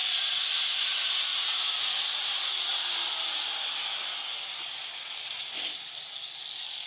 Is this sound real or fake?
real